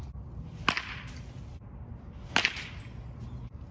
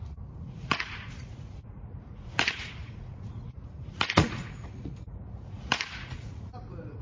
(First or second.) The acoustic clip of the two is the first